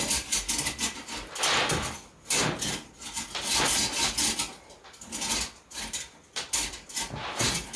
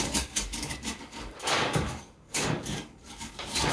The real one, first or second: first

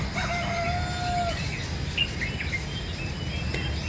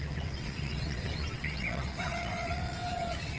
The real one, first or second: first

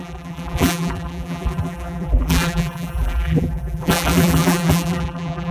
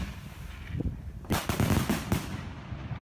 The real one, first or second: second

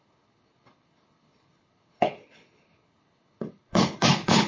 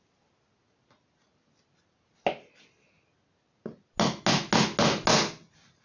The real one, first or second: second